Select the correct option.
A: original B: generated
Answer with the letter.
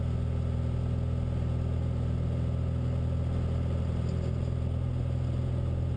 A